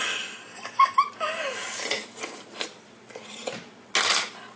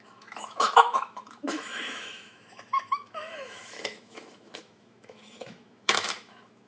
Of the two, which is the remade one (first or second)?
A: second